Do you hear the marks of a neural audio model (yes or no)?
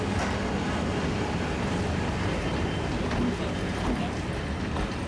no